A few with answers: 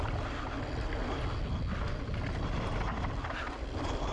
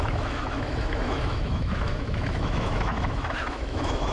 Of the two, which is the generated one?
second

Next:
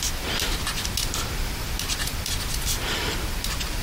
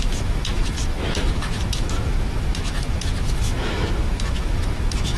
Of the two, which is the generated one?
second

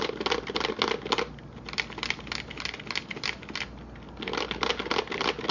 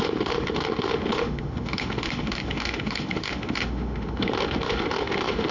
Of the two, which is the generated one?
second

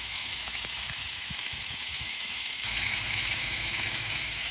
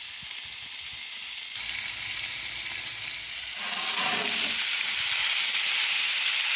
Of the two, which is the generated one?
first